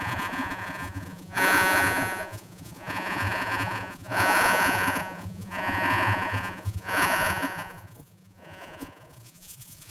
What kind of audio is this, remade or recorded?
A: remade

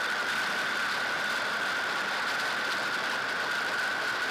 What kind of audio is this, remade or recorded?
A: recorded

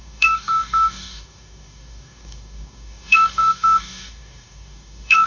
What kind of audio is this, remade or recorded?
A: remade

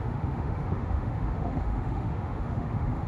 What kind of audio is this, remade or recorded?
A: remade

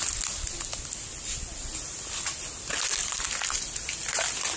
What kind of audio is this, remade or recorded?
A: recorded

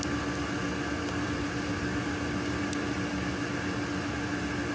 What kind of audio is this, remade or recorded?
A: recorded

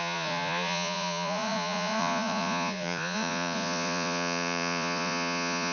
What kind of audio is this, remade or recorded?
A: remade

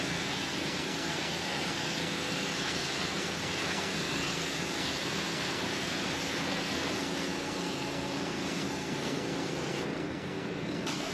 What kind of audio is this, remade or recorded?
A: remade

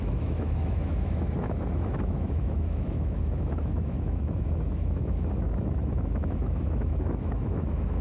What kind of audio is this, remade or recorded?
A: remade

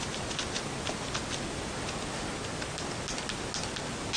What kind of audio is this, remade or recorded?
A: recorded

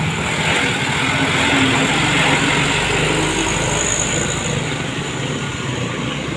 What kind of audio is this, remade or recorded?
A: recorded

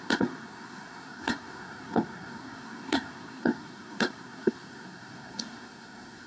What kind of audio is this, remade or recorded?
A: remade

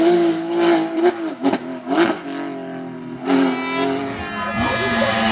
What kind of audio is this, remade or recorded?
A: recorded